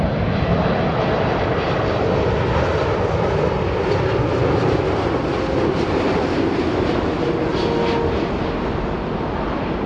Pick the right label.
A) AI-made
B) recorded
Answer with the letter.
B